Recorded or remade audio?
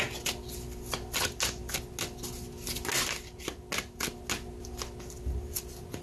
recorded